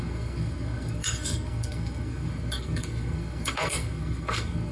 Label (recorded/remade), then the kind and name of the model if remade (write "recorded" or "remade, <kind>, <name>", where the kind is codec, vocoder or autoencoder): remade, codec, SNAC